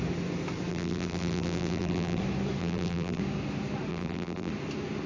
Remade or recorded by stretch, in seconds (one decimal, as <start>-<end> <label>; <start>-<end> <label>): 0.0-0.7 recorded; 0.7-2.2 remade; 2.2-2.6 recorded; 2.6-3.2 remade; 3.2-3.9 recorded; 3.9-4.5 remade; 4.5-5.1 recorded